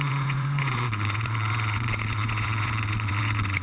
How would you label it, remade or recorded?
remade